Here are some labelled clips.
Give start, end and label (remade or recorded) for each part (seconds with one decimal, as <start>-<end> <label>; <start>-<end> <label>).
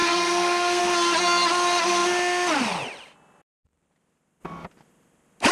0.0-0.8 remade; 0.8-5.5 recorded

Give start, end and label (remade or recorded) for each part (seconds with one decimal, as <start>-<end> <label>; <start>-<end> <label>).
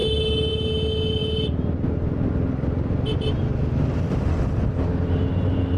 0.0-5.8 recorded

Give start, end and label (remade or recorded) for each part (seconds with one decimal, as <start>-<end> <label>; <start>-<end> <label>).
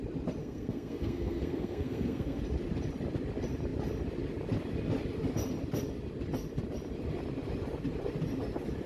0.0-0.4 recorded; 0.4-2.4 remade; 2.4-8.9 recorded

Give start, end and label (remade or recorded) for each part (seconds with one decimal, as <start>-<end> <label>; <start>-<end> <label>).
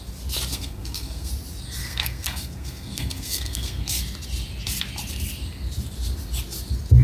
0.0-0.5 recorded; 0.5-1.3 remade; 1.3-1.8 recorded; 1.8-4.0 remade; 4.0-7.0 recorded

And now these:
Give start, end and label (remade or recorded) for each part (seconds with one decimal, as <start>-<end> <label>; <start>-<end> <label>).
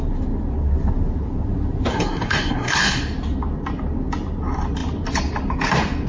0.0-1.9 recorded; 1.9-3.0 remade; 3.0-6.1 recorded